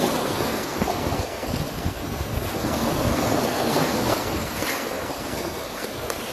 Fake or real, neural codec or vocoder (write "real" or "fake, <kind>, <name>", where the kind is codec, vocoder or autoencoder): fake, codec, SNAC